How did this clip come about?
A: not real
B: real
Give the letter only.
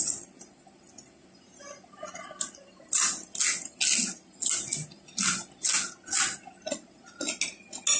B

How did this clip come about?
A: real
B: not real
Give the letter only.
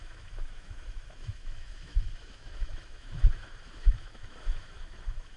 B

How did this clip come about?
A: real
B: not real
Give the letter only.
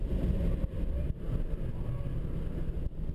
A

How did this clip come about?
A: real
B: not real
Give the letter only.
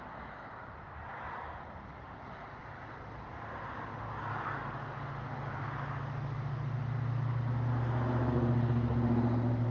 A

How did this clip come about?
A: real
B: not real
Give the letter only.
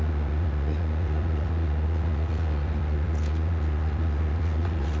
B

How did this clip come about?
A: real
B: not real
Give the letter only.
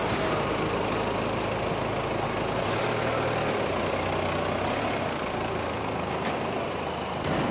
A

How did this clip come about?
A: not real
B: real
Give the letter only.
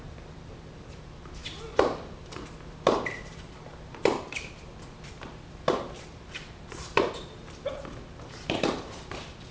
A